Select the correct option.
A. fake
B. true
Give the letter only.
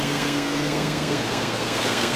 A